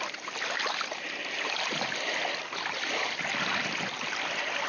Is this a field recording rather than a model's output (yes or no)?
no